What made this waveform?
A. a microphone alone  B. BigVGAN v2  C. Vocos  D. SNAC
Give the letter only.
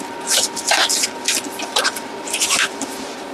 B